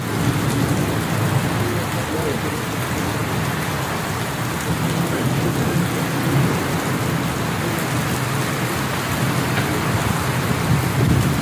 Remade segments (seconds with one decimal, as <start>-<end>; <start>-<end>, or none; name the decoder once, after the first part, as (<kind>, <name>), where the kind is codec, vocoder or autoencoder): none